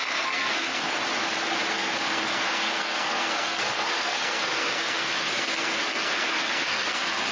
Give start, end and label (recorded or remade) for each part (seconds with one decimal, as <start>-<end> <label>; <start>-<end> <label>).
0.0-1.0 remade; 1.0-1.7 recorded; 1.7-7.3 remade